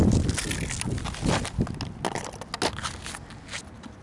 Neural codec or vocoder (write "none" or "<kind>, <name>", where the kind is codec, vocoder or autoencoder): none